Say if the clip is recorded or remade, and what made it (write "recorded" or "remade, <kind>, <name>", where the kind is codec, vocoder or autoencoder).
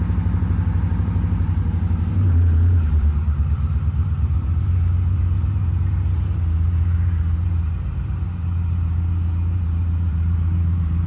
remade, vocoder, BigVGAN v2